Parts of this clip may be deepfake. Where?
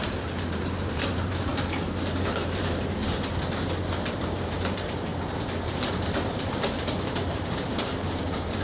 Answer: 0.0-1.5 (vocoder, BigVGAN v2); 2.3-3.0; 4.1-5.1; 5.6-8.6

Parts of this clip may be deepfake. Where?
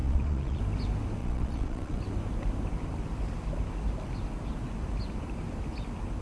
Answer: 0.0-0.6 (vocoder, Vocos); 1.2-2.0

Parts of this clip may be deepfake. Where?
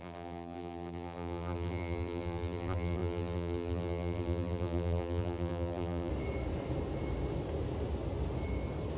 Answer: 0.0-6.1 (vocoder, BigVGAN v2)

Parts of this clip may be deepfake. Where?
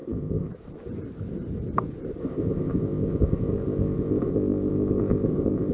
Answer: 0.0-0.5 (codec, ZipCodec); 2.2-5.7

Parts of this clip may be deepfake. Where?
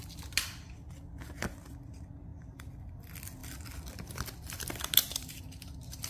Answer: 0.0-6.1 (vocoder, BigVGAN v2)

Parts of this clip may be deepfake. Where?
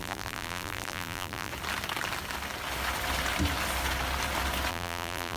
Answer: 0.0-1.5 (vocoder, BigVGAN v2); 4.7-5.4